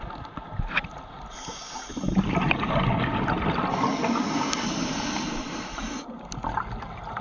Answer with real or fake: real